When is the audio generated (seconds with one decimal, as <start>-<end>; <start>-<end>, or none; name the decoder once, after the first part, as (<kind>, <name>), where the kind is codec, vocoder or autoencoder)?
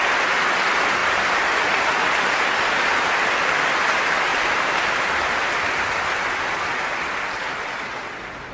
1.0-1.8 (vocoder, BigVGAN v2); 4.3-5.0